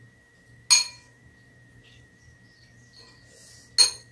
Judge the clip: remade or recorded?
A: recorded